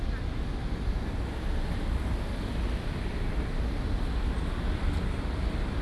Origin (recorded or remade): recorded